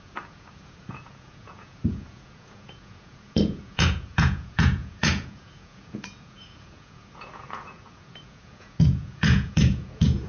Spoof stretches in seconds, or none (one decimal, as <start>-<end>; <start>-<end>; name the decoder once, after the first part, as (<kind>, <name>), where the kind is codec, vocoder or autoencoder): 0.0-10.3 (vocoder, Vocos)

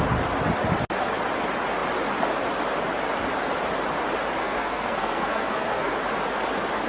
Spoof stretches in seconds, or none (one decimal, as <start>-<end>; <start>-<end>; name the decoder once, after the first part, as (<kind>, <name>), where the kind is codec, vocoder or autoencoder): 4.4-5.9 (codec, SNAC)

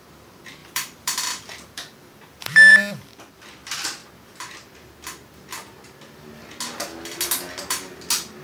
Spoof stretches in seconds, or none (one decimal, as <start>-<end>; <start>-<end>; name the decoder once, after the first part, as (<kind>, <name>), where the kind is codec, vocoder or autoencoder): 0.6-3.3 (vocoder, BigVGAN v2)

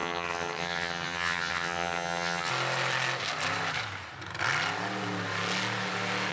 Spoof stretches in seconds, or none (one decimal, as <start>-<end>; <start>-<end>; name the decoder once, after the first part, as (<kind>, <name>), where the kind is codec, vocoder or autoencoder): 0.0-2.5 (vocoder, HiFi-GAN)

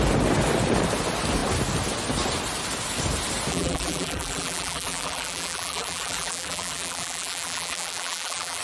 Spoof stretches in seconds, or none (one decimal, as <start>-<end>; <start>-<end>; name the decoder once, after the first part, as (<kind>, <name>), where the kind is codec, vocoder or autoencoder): 3.5-8.6 (vocoder, BigVGAN v2)

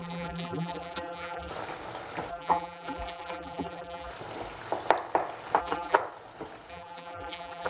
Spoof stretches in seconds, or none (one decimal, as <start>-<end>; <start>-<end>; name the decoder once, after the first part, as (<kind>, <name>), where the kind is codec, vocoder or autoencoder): 0.0-1.5 (vocoder, BigVGAN v2); 2.3-4.1; 5.6-6.0; 6.7-7.7